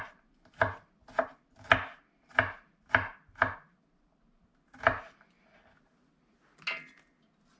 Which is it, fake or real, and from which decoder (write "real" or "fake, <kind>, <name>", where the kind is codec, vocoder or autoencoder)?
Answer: real